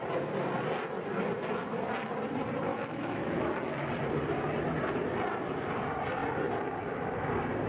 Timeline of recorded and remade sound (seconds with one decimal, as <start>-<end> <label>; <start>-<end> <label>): 0.0-2.7 recorded; 2.7-3.9 remade; 3.9-7.7 recorded